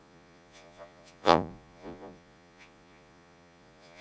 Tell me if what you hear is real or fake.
fake